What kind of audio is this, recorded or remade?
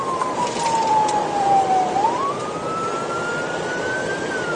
remade